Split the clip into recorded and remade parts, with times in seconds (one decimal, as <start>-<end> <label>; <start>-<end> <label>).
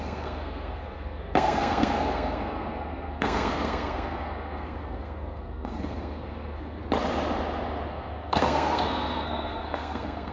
0.0-6.8 remade; 6.8-7.9 recorded; 7.9-10.3 remade